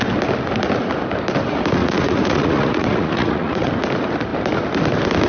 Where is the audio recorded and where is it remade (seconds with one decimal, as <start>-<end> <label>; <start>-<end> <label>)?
0.0-1.8 recorded; 1.8-3.7 remade; 3.7-5.3 recorded